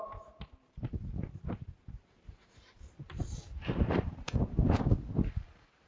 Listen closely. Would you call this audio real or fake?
fake